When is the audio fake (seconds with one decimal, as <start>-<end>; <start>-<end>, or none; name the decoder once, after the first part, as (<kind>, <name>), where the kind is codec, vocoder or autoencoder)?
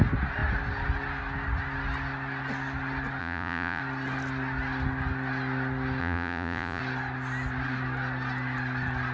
3.2-3.8 (vocoder, Vocos); 6.0-6.8